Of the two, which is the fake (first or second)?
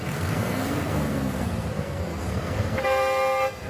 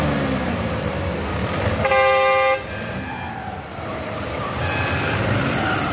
first